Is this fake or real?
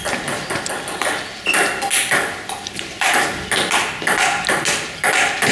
real